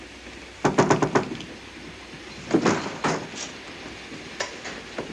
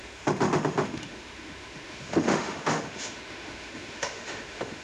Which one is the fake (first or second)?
second